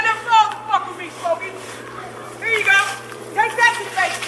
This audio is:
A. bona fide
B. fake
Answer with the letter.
B